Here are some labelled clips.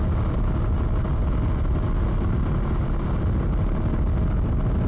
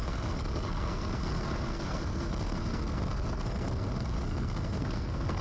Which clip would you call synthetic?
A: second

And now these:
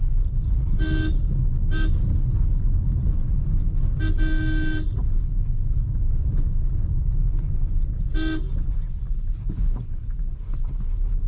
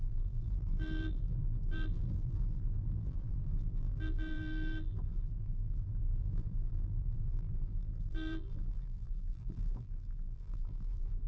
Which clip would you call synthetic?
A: second